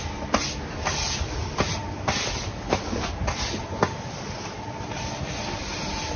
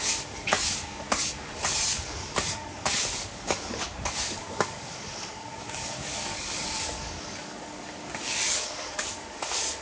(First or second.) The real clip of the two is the first